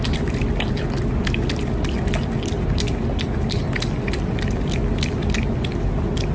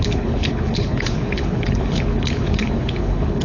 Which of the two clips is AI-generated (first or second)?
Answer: second